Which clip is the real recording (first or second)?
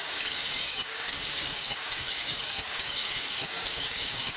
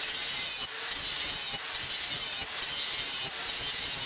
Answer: second